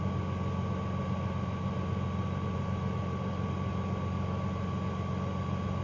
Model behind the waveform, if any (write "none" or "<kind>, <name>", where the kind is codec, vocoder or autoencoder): none